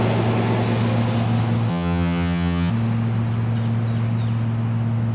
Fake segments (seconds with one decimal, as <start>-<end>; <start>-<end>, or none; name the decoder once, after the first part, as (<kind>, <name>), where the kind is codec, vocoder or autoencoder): 1.7-2.7 (vocoder, HiFi-GAN)